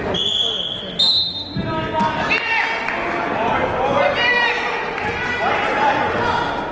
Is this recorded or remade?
recorded